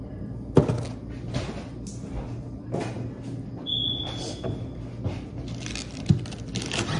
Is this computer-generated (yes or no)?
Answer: no